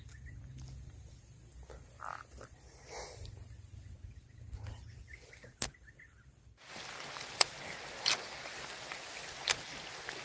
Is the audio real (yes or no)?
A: yes